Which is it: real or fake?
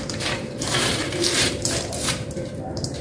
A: fake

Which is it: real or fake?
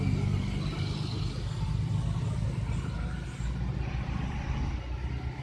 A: real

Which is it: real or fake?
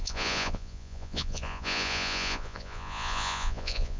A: fake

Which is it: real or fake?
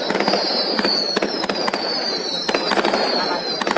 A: real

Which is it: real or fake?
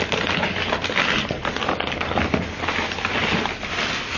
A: real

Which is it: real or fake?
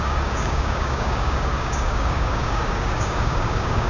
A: fake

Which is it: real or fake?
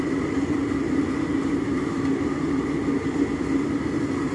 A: real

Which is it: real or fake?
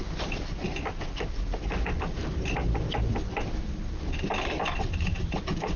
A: real